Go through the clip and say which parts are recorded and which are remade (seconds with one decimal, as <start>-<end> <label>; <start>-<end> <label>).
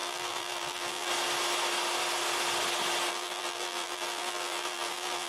0.0-1.1 remade; 1.1-3.1 recorded; 3.1-5.3 remade